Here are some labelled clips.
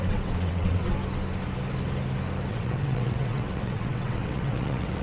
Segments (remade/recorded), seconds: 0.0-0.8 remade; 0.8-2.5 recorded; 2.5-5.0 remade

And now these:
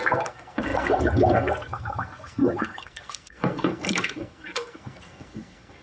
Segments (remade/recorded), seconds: 0.0-5.8 remade

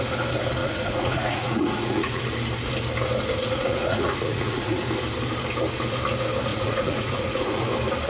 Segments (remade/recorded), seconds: 0.0-0.6 recorded; 0.6-2.2 remade; 2.2-3.4 recorded; 3.4-4.8 remade; 4.8-6.5 recorded; 6.5-7.6 remade; 7.6-8.1 recorded

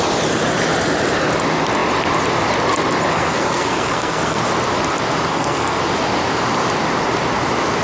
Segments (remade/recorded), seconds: 0.0-3.1 recorded; 3.1-4.4 remade; 4.4-5.3 recorded; 5.3-5.8 remade; 5.8-7.8 recorded

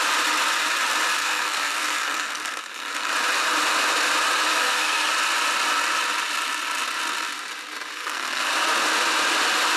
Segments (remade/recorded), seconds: 0.0-1.2 recorded; 1.2-3.1 remade; 3.1-4.5 recorded; 4.5-5.1 remade; 5.1-7.9 recorded; 7.9-8.5 remade; 8.5-9.8 recorded

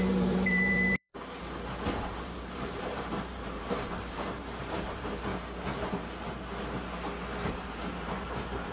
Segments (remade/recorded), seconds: 0.0-1.1 remade; 1.1-2.1 recorded; 2.1-5.3 remade; 5.3-7.5 recorded; 7.5-8.7 remade